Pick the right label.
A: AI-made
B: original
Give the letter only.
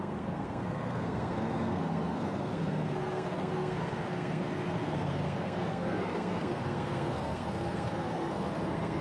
A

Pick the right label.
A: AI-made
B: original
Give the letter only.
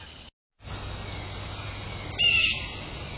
B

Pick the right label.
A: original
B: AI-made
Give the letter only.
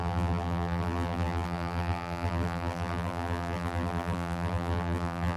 B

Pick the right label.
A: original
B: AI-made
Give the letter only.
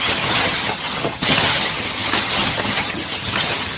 B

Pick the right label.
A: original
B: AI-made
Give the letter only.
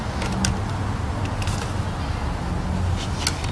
A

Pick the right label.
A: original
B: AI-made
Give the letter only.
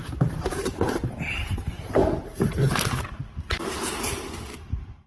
B